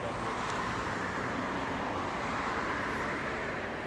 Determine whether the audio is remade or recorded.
recorded